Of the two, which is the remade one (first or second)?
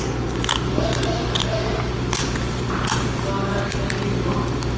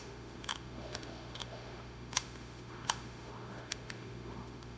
second